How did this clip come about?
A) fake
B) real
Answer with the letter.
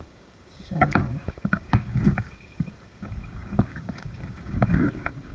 A